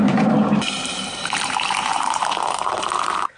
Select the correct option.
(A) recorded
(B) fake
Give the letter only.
B